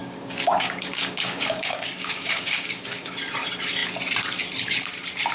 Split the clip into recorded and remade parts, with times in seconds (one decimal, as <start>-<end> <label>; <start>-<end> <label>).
0.0-3.2 remade; 3.2-5.3 recorded